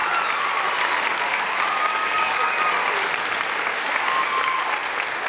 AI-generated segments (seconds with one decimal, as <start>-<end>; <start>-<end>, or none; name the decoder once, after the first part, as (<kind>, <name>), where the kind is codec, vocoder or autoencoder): 1.3-2.6 (codec, DAC); 3.7-4.3